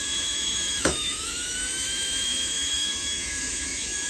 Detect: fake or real fake